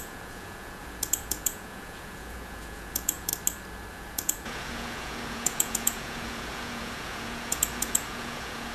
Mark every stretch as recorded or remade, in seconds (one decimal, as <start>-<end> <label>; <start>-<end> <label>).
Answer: 0.0-3.3 remade; 3.3-3.9 recorded; 3.9-8.7 remade